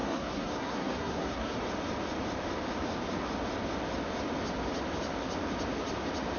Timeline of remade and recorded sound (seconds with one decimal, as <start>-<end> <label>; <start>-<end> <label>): 0.0-1.6 remade; 1.6-6.4 recorded